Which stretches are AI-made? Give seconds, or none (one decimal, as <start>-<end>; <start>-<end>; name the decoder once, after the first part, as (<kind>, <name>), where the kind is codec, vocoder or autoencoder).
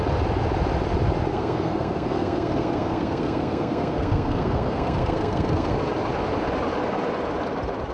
1.3-5.7 (codec, SNAC)